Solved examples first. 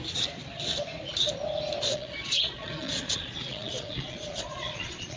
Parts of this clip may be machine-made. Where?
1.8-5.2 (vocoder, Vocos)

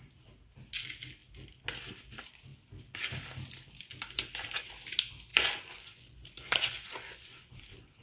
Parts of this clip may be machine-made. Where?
5.3-7.5 (vocoder, Vocos)

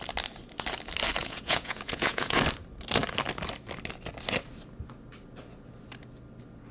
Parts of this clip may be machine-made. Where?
1.2-2.4 (vocoder, Vocos)

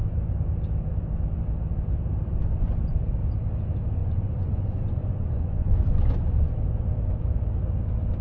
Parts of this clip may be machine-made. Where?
4.0-6.5 (vocoder, Vocos)

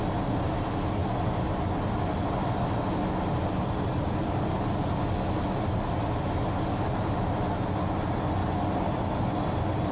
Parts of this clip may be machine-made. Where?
none